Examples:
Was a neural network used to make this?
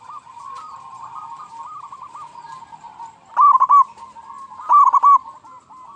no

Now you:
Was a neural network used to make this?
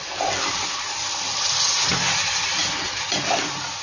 no